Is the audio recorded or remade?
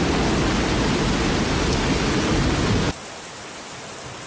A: recorded